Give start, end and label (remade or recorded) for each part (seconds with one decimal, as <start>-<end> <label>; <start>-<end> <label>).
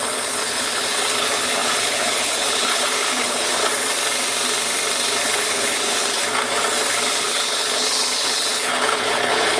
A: 0.0-3.6 remade; 3.6-5.2 recorded; 5.2-6.2 remade; 6.2-7.2 recorded; 7.2-9.6 remade